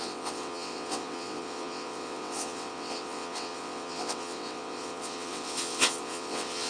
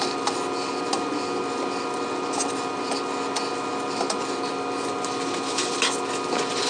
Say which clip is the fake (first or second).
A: first